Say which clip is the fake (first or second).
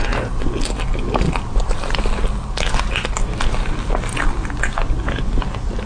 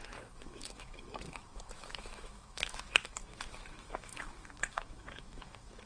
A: second